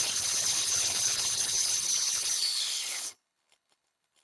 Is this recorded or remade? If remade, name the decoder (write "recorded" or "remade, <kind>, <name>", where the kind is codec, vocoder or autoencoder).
remade, codec, HILCodec